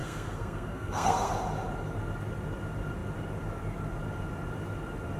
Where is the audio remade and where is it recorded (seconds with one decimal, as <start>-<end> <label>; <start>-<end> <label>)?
0.0-1.3 remade; 1.3-5.2 recorded